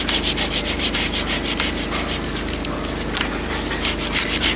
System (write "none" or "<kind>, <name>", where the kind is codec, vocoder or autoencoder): none